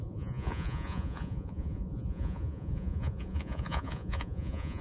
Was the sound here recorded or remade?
remade